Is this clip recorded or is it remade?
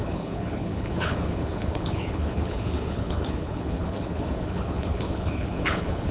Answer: remade